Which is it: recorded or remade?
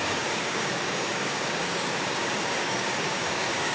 remade